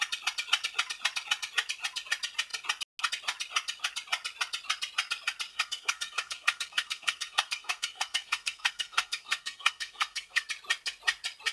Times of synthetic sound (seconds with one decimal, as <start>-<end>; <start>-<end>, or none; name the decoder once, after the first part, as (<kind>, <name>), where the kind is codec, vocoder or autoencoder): 5.5-10.5 (codec, SNAC)